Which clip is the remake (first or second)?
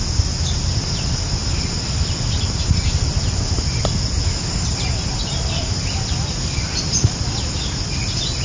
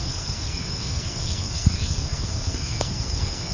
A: second